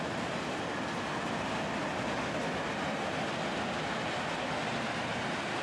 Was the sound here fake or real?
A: real